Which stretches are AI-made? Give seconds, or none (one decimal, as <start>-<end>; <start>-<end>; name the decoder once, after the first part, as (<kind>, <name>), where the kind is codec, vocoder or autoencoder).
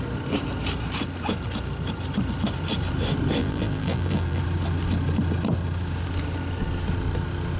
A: 3.4-4.4 (vocoder, BigVGAN v2)